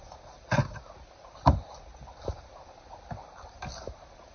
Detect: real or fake real